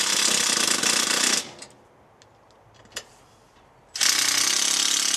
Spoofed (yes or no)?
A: no